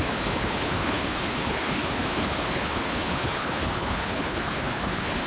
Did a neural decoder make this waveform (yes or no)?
yes